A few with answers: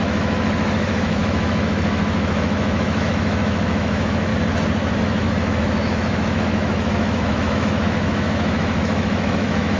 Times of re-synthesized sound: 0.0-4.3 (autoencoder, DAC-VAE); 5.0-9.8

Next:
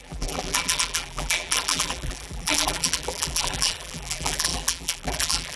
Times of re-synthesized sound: 0.0-5.6 (vocoder, BigVGAN v2)

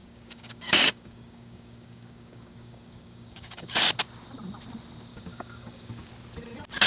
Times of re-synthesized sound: 0.0-3.8 (codec, DAC); 5.1-6.1

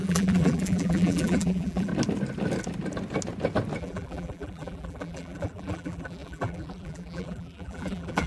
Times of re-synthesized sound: 0.0-1.9 (vocoder, BigVGAN v2); 3.8-8.3

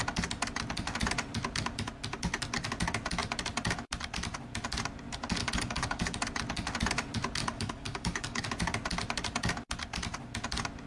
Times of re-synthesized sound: 5.4-6.2 (codec, DAC); 7.4-8.4